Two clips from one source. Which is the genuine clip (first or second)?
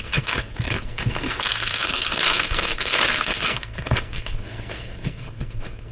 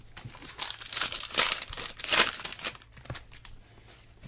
second